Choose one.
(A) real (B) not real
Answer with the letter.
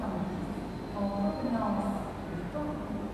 A